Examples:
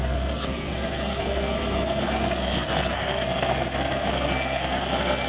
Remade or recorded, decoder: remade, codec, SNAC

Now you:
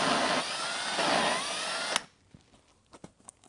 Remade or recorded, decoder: recorded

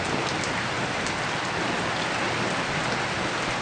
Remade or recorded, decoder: recorded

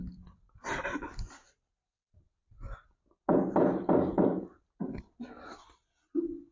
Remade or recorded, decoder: recorded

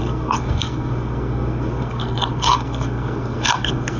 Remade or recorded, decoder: remade, codec, SNAC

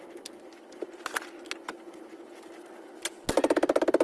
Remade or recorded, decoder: recorded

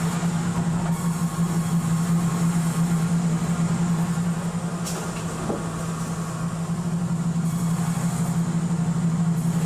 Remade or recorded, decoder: recorded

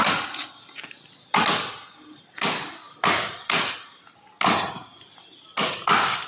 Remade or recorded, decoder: recorded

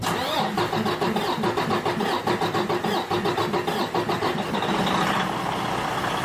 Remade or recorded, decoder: recorded